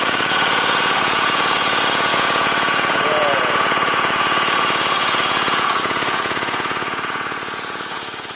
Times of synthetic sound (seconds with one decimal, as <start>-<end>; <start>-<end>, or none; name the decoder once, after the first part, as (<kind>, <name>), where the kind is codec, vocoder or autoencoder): 0.0-8.4 (vocoder, Vocos)